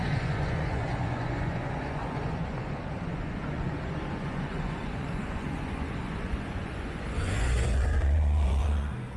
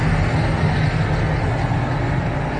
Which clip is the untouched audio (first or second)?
second